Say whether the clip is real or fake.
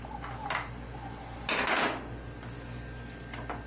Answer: real